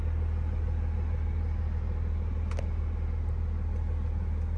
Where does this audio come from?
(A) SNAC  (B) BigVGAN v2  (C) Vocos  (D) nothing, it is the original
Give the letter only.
D